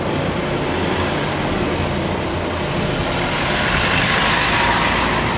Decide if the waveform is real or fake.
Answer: real